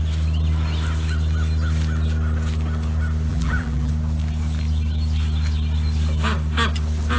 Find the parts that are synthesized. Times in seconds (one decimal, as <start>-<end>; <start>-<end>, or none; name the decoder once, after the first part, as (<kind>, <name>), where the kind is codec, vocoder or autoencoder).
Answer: 3.3-3.9 (vocoder, BigVGAN v2)

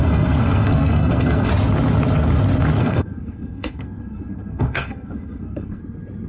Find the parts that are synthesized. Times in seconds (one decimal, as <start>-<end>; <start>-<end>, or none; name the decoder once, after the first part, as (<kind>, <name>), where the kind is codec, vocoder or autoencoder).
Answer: 0.0-1.5 (codec, SNAC); 2.8-5.8